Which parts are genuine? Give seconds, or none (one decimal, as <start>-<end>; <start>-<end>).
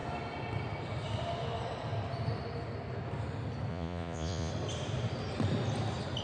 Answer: 0.0-3.7; 4.5-6.2